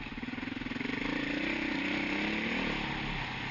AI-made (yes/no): no